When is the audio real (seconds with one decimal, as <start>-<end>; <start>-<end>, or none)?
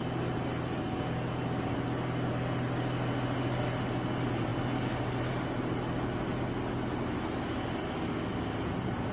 0.0-9.1